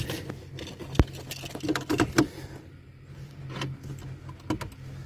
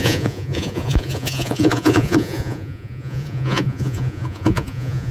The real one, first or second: first